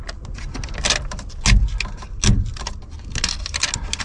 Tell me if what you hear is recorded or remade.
recorded